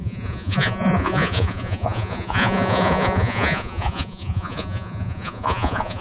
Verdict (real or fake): fake